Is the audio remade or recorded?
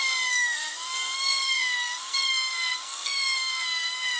remade